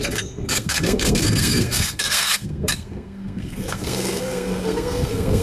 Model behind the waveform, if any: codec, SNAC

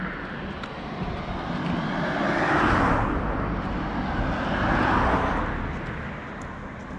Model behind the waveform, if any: none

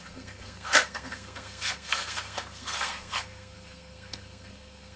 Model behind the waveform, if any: codec, SNAC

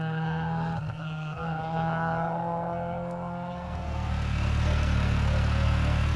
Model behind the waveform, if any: codec, SNAC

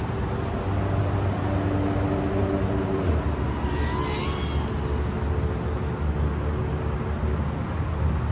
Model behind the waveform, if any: none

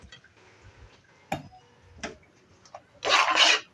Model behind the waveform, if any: none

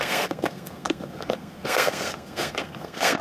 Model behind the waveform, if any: codec, SNAC